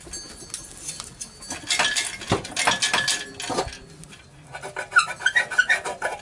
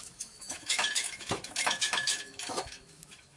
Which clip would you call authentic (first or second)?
first